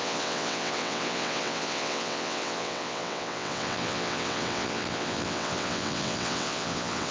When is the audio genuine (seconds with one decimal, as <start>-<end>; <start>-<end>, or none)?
none